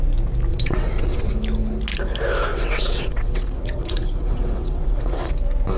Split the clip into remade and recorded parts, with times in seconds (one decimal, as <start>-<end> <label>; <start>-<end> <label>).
0.0-0.5 recorded; 0.5-1.3 remade; 1.3-2.5 recorded; 2.5-5.3 remade; 5.3-5.8 recorded